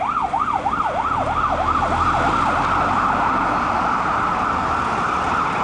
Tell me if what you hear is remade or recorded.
recorded